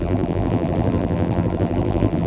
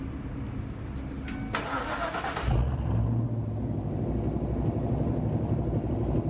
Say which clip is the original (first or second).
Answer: second